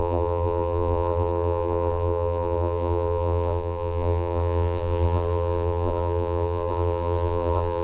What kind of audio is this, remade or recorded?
remade